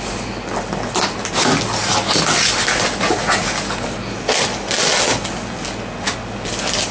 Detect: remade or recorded recorded